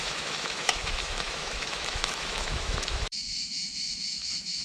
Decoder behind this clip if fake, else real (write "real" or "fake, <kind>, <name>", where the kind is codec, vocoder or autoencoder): fake, autoencoder, DAC-VAE